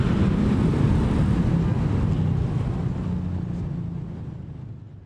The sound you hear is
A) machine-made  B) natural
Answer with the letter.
B